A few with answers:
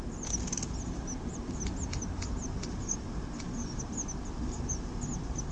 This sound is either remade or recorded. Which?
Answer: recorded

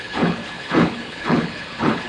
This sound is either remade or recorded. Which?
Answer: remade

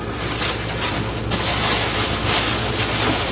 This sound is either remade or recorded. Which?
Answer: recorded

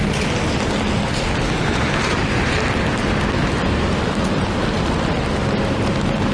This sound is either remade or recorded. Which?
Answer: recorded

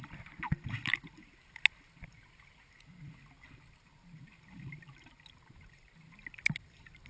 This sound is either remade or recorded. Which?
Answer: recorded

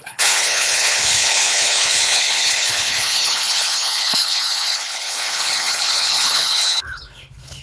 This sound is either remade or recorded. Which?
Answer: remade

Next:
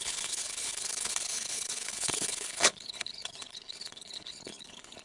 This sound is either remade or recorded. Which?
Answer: remade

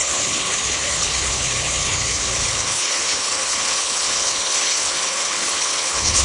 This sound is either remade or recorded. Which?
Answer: remade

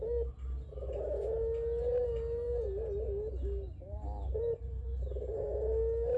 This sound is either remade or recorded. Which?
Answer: recorded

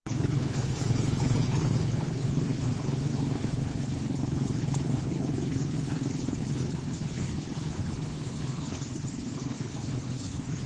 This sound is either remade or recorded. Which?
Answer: remade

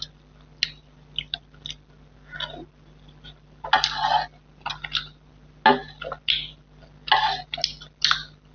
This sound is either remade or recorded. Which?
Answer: recorded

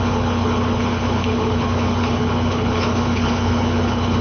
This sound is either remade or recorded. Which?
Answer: remade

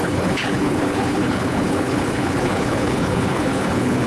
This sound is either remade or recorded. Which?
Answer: remade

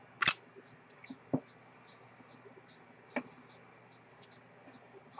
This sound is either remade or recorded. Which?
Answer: recorded